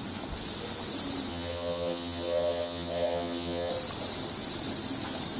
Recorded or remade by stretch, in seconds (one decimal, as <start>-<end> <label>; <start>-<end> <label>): 0.0-1.3 recorded; 1.3-3.7 remade; 3.7-5.4 recorded